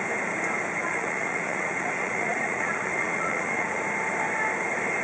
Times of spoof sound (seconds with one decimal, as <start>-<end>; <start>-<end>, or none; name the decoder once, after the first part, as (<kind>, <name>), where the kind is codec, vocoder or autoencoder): 0.8-3.8 (vocoder, Vocos)